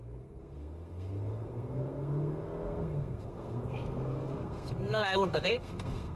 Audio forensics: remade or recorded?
remade